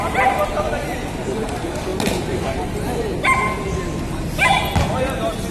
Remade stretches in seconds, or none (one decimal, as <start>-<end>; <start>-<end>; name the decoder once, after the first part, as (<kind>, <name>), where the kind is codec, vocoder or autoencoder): none